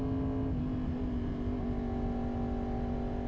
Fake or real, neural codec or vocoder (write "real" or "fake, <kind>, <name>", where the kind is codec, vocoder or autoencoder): real